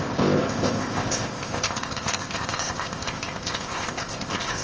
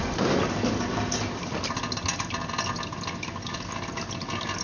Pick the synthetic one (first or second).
first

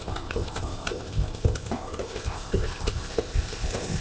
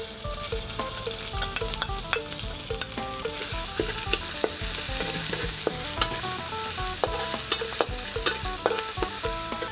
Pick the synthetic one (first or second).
first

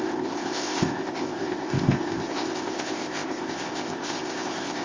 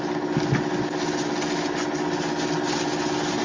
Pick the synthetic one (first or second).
first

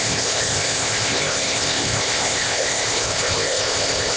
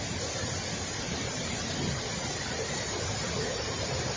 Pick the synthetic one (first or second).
first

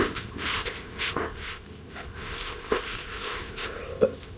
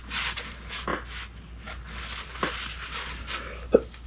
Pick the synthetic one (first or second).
first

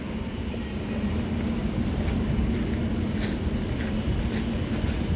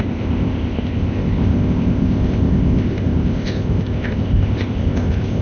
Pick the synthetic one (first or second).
second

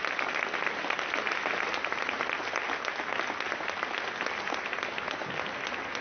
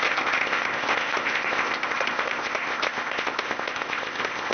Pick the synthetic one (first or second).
second